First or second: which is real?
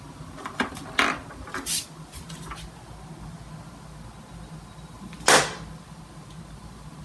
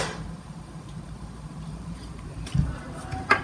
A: first